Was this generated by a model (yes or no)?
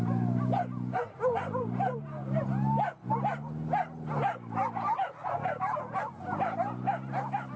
no